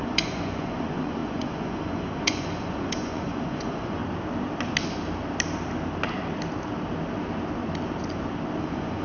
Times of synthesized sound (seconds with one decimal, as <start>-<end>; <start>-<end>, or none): 0.0-4.0; 8.6-9.0